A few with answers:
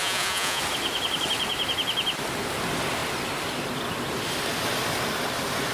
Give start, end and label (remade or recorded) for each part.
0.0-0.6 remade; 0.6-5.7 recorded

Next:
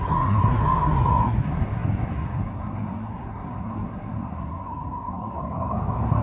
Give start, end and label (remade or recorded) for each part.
0.0-6.2 remade

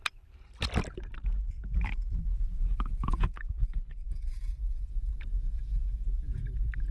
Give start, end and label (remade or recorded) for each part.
0.0-2.3 recorded; 2.3-6.4 remade; 6.4-6.9 recorded

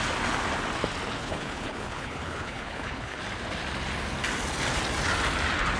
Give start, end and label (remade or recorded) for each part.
0.0-1.2 recorded; 1.2-3.2 remade; 3.2-5.8 recorded